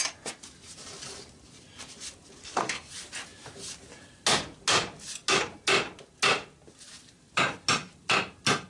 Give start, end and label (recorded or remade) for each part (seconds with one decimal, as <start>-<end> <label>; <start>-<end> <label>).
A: 0.0-2.4 recorded; 2.4-2.9 remade; 2.9-8.7 recorded